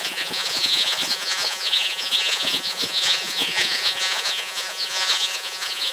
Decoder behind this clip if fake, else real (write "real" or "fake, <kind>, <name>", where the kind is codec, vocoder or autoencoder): fake, vocoder, Vocos